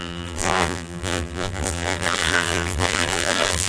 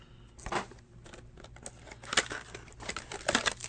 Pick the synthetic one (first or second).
first